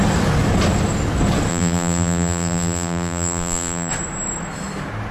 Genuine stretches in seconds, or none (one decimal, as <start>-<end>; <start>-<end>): 0.0-1.5; 3.9-5.1